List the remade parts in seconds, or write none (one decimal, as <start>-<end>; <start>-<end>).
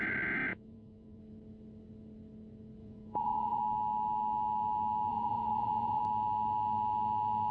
0.5-1.2; 2.8-3.6; 5.1-6.0